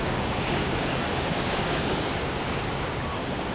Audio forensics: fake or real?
fake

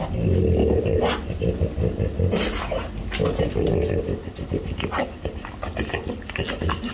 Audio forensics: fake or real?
real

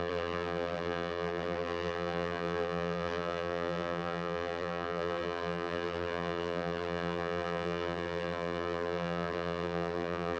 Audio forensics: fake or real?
fake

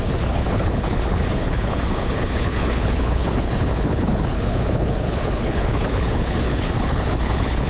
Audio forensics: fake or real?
fake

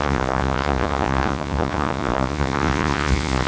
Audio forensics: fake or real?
fake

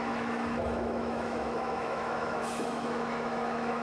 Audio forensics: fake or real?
fake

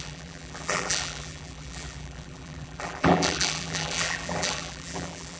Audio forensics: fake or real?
fake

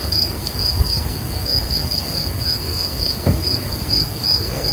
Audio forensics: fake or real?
fake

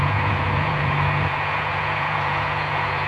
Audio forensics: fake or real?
fake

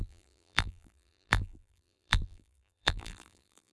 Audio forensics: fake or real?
fake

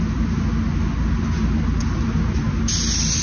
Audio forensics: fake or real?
real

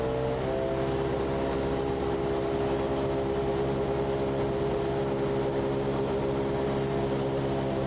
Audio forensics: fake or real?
real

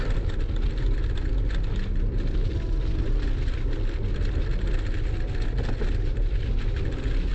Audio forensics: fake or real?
real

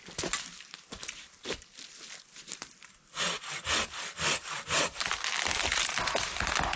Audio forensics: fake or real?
real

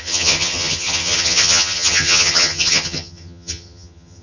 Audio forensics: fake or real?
fake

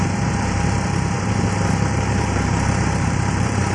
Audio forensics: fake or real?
fake